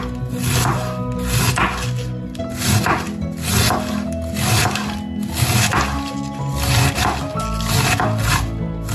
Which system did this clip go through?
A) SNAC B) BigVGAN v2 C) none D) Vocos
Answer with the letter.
C